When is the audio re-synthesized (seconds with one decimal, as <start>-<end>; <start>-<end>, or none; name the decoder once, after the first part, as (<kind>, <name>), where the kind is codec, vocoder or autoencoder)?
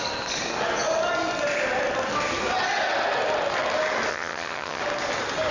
4.1-4.8 (vocoder, HiFi-GAN)